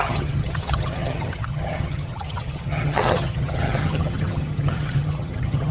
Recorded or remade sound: remade